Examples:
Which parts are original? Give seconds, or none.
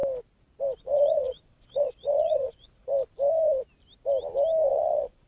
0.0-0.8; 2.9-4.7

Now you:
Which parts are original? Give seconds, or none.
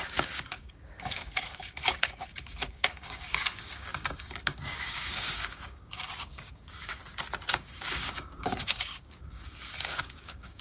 7.0-7.5